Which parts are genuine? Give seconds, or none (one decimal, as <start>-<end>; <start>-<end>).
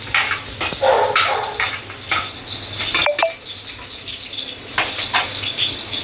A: 0.0-6.0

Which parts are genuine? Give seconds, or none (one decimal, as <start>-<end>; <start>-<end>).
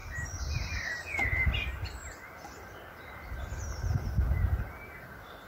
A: 0.0-5.5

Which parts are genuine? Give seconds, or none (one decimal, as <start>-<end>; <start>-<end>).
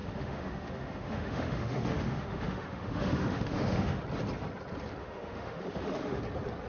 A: 4.0-5.0; 6.2-6.7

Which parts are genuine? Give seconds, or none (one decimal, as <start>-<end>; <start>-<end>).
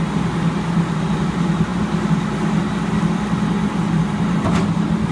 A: 0.0-5.1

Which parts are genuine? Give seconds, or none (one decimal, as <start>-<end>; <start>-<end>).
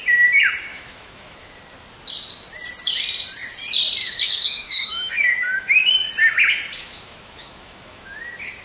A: 0.0-0.7; 1.5-4.0; 6.1-6.8; 8.2-8.6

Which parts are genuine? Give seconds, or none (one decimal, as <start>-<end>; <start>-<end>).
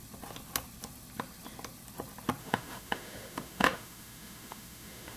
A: 0.0-2.4